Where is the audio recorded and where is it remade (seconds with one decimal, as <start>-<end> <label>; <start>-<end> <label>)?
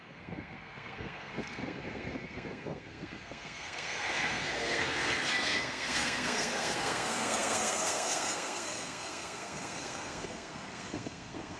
0.0-11.6 remade